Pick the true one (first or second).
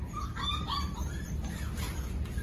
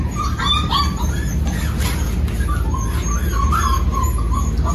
second